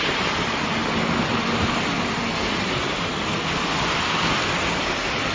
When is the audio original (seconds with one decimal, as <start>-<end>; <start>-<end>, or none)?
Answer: 0.0-5.3